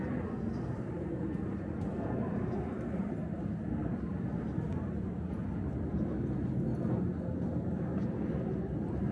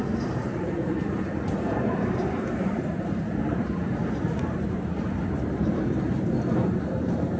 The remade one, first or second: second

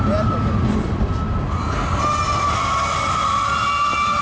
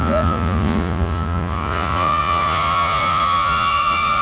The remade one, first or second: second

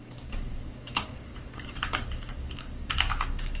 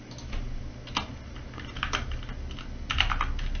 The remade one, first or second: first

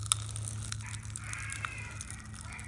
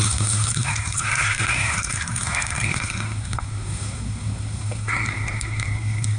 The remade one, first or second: second